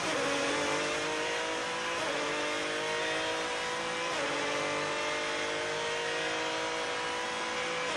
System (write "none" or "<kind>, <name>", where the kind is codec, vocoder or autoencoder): none